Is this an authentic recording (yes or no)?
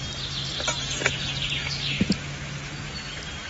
yes